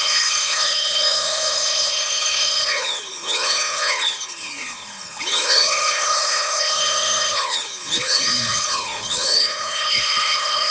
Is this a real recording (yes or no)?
no